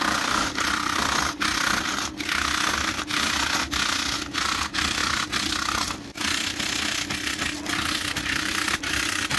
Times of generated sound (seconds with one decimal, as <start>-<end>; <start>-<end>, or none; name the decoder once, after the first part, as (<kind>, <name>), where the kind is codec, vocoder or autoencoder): none